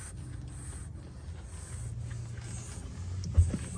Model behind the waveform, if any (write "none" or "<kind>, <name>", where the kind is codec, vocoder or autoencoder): none